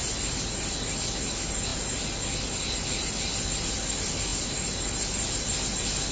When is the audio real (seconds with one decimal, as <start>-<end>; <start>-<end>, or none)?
0.0-6.1